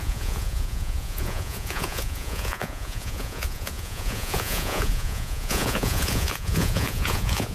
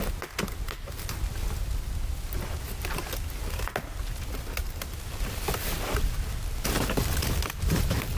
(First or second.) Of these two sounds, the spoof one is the first